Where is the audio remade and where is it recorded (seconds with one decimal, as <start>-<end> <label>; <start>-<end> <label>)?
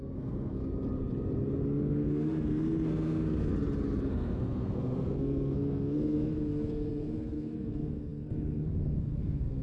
0.0-0.6 remade; 0.6-1.8 recorded; 1.8-3.5 remade; 3.5-4.1 recorded; 4.1-9.6 remade